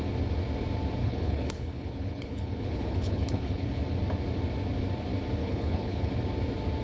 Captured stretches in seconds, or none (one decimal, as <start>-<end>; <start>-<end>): 0.0-1.0; 3.8-5.4; 6.1-6.8